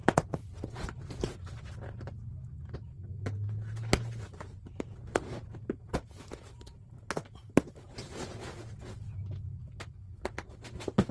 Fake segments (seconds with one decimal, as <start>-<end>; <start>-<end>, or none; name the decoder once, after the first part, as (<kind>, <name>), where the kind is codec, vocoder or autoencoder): none